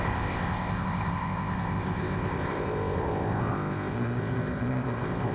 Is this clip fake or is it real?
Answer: fake